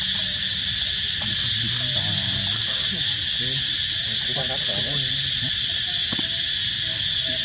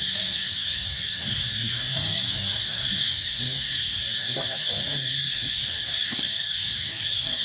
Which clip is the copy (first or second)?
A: second